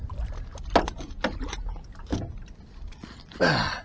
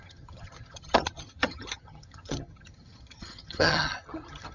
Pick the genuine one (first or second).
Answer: first